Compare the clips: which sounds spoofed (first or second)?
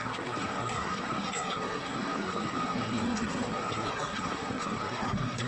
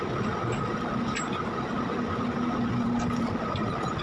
first